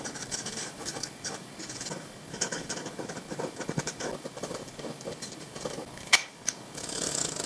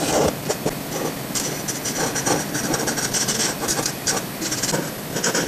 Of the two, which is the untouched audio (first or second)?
second